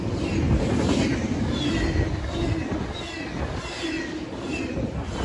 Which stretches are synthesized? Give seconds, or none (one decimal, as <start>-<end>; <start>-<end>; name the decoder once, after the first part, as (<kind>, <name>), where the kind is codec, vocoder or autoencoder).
none